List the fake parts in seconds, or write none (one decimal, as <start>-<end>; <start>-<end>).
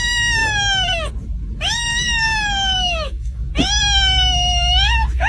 1.9-3.5